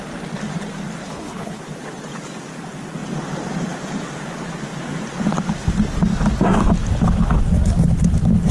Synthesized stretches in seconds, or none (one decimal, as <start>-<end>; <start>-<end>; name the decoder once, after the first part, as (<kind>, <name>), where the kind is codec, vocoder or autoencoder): 1.0-1.6 (codec, HILCodec)